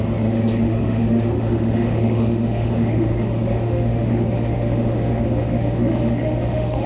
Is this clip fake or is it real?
fake